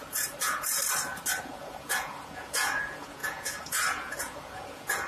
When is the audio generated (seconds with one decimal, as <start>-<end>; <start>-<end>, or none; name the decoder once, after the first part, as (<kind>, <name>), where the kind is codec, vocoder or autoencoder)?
0.0-0.8 (vocoder, Vocos); 1.4-5.1